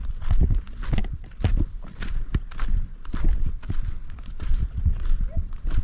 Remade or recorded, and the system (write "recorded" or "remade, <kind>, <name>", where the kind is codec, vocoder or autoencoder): recorded